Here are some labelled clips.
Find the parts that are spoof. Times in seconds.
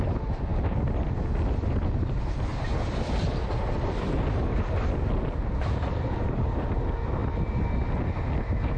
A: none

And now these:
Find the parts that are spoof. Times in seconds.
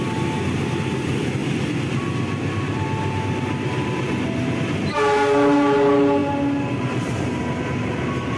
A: none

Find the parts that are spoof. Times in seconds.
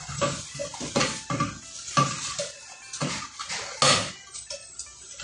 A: none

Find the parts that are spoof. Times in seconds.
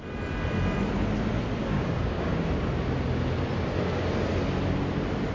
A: 1.6-2.3 (codec, DAC)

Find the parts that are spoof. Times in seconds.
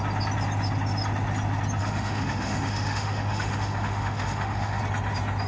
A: 1.8-4.8 (autoencoder, DAC-VAE)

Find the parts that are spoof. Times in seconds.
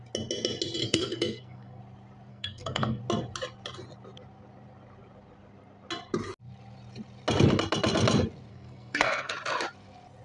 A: 0.8-1.8 (codec, SNAC); 2.3-3.0; 8.5-9.3